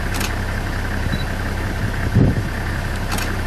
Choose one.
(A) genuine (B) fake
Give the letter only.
A